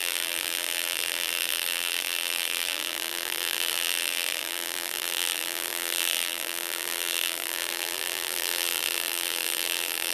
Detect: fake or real fake